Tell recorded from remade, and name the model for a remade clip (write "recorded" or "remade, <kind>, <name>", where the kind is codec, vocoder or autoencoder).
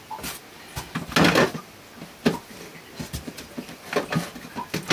recorded